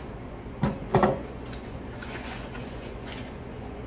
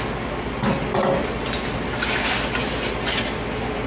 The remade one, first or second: first